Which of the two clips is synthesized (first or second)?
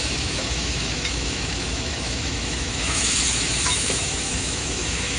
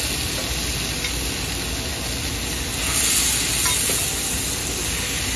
first